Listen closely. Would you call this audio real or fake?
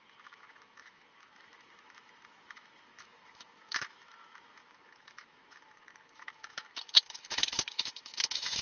fake